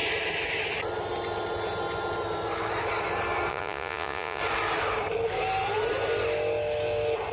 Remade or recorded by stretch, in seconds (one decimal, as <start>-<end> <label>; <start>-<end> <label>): 0.0-3.5 recorded; 3.5-4.4 remade; 4.4-7.3 recorded